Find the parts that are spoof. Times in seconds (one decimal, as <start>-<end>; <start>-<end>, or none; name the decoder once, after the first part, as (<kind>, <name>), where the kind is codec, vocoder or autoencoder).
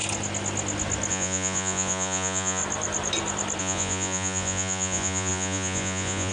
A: 1.1-2.6 (vocoder, Vocos); 3.6-6.3